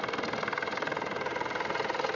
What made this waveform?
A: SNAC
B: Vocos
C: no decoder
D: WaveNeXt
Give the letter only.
C